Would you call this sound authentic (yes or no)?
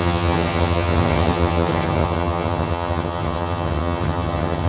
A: no